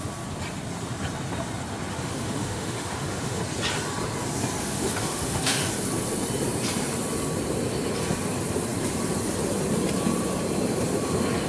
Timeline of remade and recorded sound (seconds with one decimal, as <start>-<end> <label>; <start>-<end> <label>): 0.0-1.9 recorded; 1.9-3.4 remade; 3.4-4.6 recorded; 4.6-5.7 remade; 5.7-11.5 recorded